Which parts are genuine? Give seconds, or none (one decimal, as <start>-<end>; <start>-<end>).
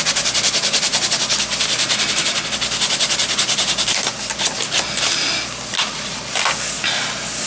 0.0-7.5